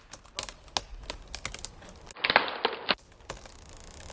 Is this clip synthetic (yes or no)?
no